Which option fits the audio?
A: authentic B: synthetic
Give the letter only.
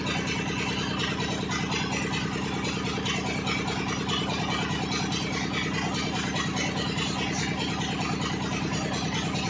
A